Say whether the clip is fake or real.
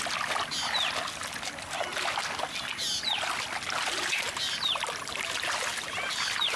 real